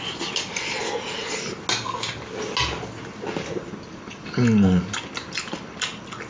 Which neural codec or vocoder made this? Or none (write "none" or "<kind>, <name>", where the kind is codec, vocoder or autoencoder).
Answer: none